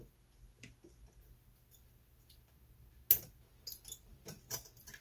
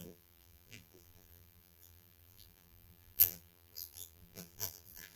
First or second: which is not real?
second